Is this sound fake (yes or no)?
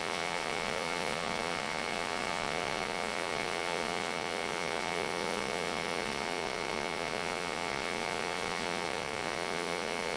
yes